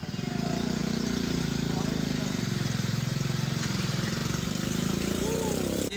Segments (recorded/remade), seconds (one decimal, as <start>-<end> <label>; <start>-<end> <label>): 0.0-4.2 remade; 4.2-4.7 recorded; 4.7-6.0 remade